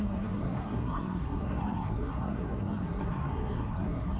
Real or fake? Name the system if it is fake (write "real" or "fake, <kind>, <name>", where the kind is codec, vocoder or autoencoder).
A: fake, codec, SNAC